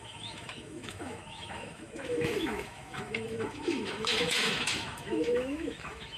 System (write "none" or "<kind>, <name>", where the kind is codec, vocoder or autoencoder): autoencoder, DAC-VAE